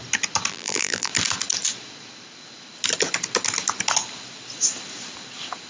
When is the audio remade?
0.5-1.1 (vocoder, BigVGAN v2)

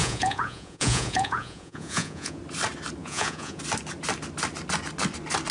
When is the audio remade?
0.0-2.4 (vocoder, Vocos); 3.0-3.6

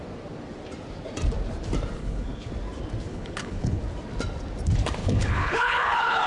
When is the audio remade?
2.0-2.5 (codec, HILCodec); 3.1-3.8; 5.0-6.3

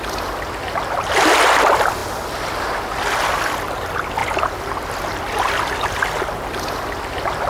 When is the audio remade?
4.2-6.2 (vocoder, BigVGAN v2)

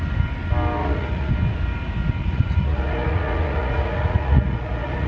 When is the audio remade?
0.8-1.3 (vocoder, Vocos); 2.2-5.1